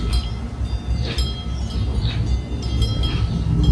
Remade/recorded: recorded